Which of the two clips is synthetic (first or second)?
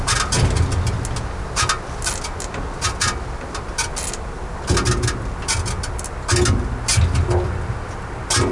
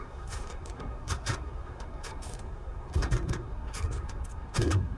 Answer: second